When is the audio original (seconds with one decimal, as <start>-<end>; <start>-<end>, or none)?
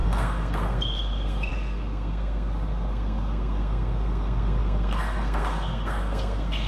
none